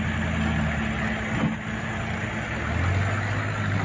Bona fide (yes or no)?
yes